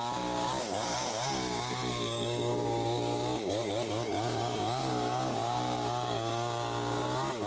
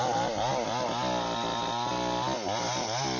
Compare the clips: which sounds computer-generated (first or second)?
first